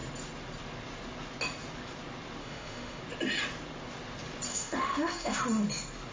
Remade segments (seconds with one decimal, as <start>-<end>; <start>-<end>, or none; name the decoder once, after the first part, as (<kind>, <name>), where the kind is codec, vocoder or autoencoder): 2.4-3.0 (autoencoder, DAC-VAE); 4.5-5.4